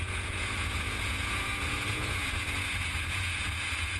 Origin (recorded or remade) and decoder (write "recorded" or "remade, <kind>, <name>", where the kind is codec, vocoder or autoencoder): remade, vocoder, Vocos